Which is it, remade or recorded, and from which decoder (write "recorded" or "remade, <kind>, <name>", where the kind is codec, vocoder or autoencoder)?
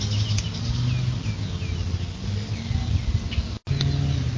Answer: recorded